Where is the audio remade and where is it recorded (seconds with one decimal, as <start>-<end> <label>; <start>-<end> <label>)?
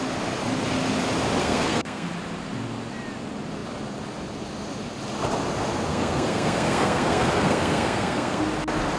0.0-1.4 recorded; 1.4-2.1 remade; 2.1-5.9 recorded; 5.9-8.4 remade; 8.4-9.0 recorded